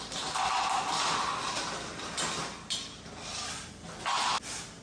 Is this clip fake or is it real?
real